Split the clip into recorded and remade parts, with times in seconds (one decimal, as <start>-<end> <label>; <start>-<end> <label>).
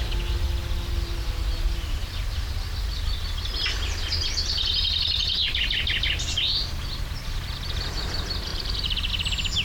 0.0-8.5 recorded; 8.5-9.1 remade; 9.1-9.6 recorded